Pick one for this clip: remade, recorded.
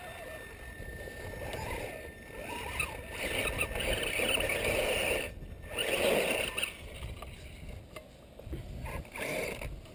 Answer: recorded